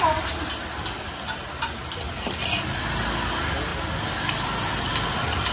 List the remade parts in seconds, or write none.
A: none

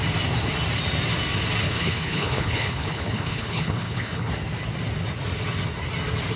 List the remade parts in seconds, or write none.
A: 1.6-4.3 (codec, HILCodec)

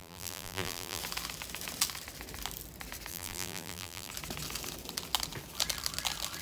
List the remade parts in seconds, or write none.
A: 0.0-1.0 (vocoder, BigVGAN v2); 3.1-4.1

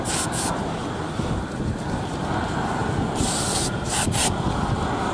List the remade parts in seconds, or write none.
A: 2.8-4.6 (vocoder, BigVGAN v2)

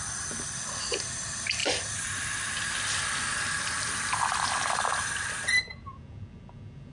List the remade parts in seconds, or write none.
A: 1.6-5.7 (vocoder, BigVGAN v2)

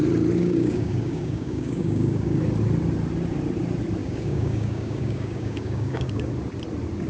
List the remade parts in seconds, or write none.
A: 0.4-2.4 (codec, DAC); 4.0-6.3

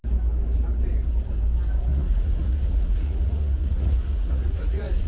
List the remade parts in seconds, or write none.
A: 1.9-5.1 (vocoder, Vocos)